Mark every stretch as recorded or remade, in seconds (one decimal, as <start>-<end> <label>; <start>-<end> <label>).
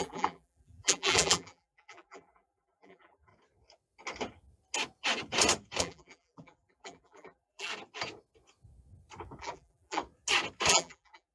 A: 0.0-3.3 remade; 3.3-5.8 recorded; 5.8-7.7 remade; 7.7-9.4 recorded; 9.4-10.0 remade; 10.0-10.7 recorded; 10.7-11.3 remade